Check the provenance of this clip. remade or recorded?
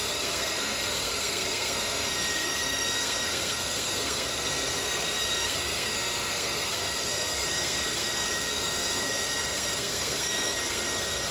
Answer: remade